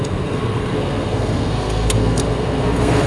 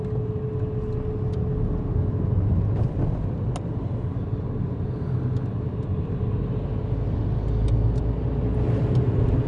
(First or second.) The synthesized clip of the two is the first